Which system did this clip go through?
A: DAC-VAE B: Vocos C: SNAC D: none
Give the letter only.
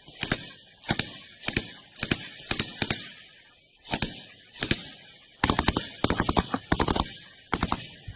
D